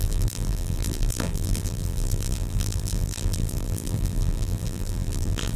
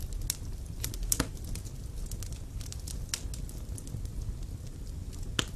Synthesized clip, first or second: first